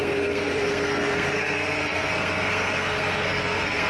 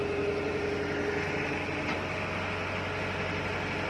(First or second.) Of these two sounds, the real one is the second